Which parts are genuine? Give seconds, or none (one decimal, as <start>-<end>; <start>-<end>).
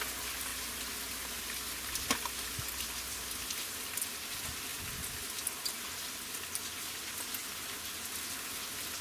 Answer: 0.0-9.0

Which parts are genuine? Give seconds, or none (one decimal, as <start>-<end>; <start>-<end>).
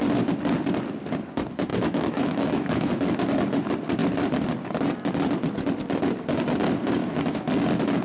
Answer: 0.0-1.7; 2.9-7.0; 7.5-8.0